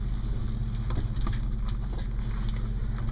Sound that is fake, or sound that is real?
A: real